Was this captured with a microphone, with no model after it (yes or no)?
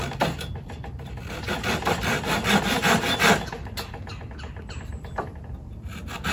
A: yes